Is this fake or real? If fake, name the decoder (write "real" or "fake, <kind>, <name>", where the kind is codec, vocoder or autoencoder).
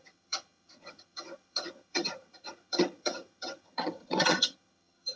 fake, vocoder, HiFi-GAN